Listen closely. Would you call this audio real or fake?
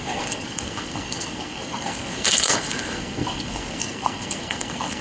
fake